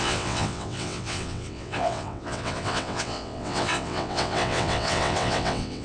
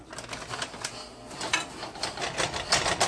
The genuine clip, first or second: second